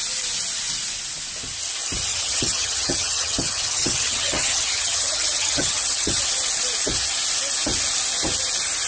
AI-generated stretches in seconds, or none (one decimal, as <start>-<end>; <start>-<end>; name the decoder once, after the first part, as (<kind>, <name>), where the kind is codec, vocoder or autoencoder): 2.1-6.2 (vocoder, HiFi-GAN)